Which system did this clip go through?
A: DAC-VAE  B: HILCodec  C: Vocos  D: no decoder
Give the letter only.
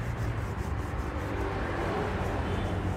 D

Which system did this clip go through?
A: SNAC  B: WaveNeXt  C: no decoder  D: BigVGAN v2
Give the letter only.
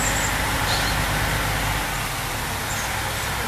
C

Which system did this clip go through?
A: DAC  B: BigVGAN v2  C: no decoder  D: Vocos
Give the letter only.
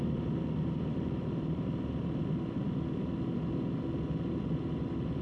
C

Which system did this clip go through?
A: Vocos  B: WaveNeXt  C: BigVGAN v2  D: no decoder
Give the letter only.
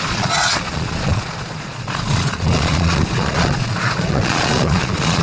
A